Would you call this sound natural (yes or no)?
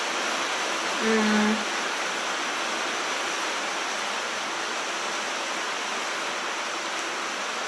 yes